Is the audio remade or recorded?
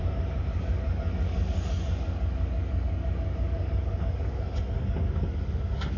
remade